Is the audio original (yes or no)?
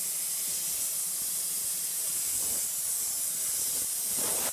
yes